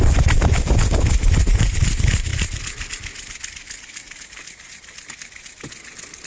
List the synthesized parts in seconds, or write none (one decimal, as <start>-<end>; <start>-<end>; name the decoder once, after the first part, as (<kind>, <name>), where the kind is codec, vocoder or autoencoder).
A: none